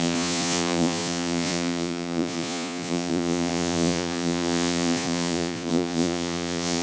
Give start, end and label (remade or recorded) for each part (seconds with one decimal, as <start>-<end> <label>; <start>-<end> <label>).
0.0-6.8 remade